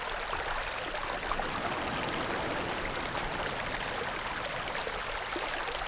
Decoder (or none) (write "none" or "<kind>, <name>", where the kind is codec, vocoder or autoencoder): none